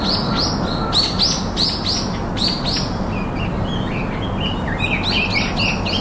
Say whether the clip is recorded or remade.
recorded